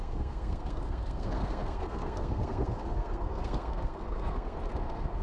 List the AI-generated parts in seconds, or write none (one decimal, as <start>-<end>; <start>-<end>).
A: 0.0-5.2